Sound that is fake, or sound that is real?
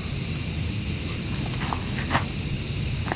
real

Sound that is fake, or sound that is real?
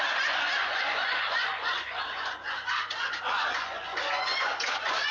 fake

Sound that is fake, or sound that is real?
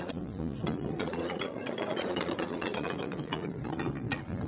fake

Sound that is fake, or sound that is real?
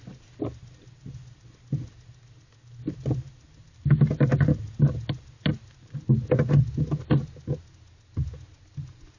real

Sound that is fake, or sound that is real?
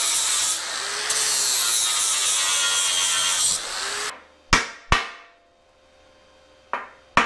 real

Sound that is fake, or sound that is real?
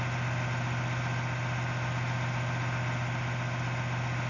real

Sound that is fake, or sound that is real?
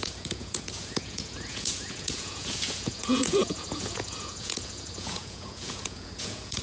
fake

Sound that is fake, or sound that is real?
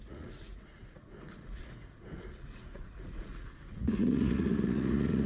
fake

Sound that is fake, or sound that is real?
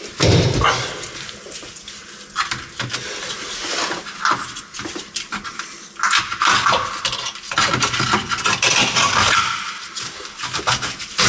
real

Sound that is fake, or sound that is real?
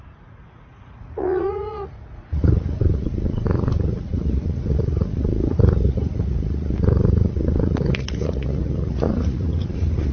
fake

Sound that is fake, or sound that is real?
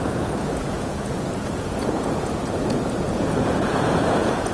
fake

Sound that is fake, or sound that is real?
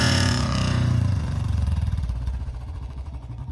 fake